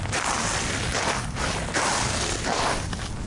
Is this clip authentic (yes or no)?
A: yes